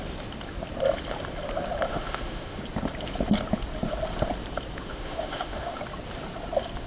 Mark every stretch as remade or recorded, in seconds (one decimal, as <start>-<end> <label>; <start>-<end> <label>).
0.0-1.9 recorded; 1.9-2.6 remade; 2.6-4.9 recorded; 4.9-5.8 remade; 5.8-6.9 recorded

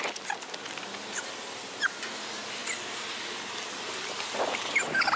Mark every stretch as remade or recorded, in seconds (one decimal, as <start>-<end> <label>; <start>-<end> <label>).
0.0-5.2 recorded